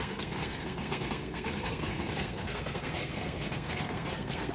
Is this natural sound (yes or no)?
no